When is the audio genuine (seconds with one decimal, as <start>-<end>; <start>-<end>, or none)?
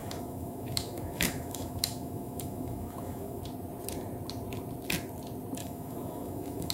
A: 3.4-5.6